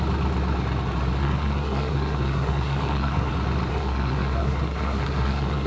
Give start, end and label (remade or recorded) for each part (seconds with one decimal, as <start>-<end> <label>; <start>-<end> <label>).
0.0-1.2 recorded; 1.2-3.3 remade; 3.3-3.7 recorded; 3.7-5.7 remade